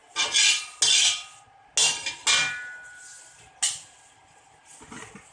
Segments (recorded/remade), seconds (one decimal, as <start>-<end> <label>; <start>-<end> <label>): 0.0-5.3 recorded